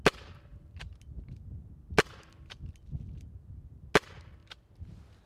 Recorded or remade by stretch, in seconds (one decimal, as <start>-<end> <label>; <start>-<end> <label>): 0.0-5.3 recorded